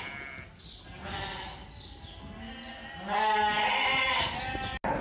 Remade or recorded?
recorded